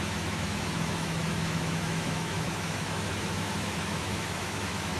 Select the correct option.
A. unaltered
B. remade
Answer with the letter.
B